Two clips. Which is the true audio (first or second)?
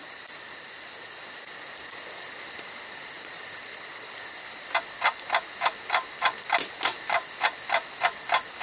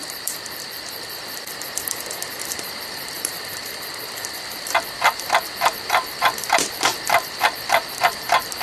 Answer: first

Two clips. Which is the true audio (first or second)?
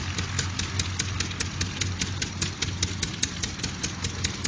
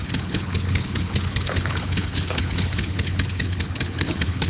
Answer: first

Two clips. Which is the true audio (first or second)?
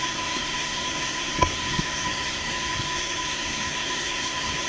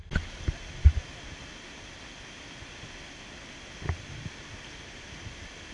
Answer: second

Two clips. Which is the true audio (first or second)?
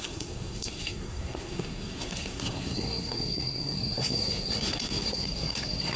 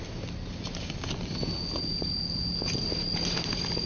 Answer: second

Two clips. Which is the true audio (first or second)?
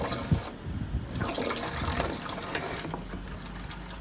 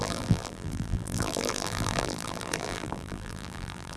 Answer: first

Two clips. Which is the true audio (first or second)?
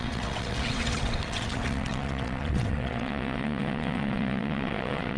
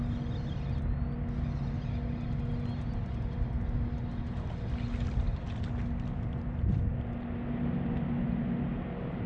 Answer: second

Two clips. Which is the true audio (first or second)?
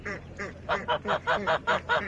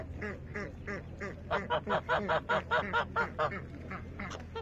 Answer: second